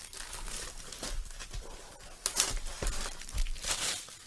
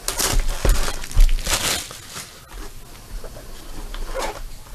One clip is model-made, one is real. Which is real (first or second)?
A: second